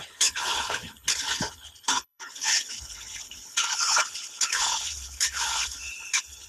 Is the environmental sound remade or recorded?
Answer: remade